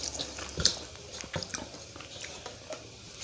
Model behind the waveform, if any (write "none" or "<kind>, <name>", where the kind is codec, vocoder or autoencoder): none